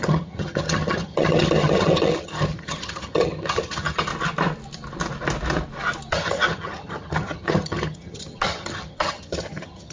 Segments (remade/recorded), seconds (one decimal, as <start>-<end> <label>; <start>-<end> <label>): 0.0-4.1 remade; 4.1-6.1 recorded; 6.1-9.9 remade